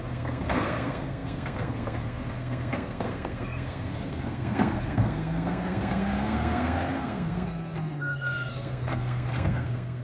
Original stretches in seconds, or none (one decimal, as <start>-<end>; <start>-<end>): none